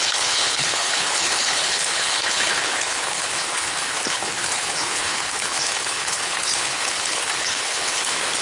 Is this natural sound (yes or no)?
no